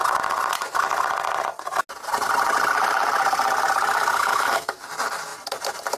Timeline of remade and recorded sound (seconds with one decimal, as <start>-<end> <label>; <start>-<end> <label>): 0.0-4.3 recorded; 4.3-4.8 remade; 4.8-6.0 recorded